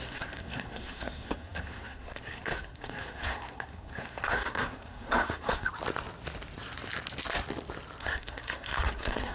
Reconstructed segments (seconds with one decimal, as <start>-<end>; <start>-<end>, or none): 0.0-5.7; 8.0-9.3